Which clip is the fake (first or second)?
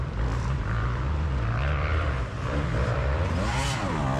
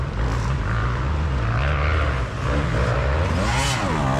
first